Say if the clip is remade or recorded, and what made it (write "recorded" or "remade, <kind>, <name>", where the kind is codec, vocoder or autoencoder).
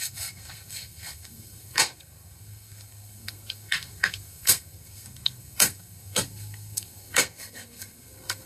remade, codec, SNAC